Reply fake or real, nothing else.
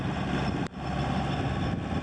real